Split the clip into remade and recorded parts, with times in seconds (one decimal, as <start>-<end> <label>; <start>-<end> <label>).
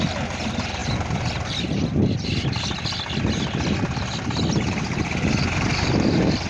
0.0-6.5 recorded